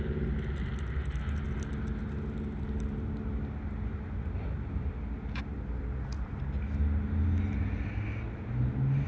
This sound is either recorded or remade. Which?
recorded